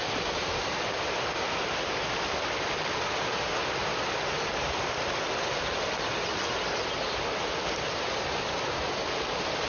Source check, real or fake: real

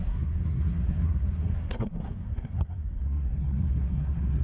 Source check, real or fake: fake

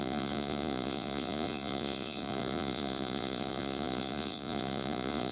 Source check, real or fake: fake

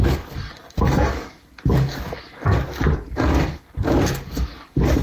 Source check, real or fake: fake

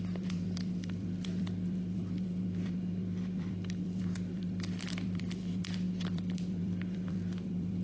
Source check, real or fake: fake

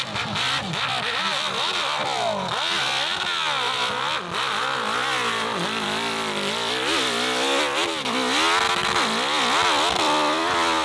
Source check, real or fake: real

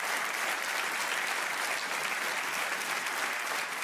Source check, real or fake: real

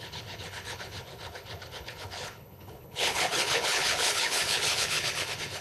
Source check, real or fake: fake